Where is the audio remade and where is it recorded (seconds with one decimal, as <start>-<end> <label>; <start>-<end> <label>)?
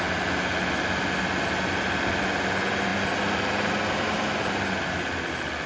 0.0-5.7 recorded